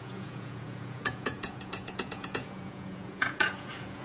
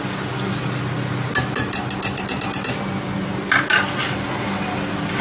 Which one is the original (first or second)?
second